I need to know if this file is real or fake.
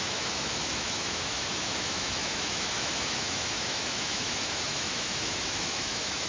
fake